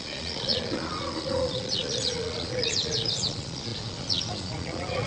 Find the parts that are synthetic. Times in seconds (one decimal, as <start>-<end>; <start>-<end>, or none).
0.0-5.1